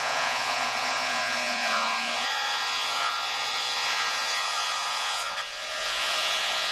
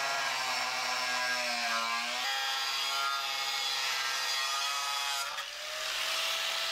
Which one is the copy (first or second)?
first